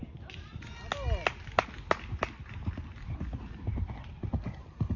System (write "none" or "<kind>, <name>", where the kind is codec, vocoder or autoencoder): none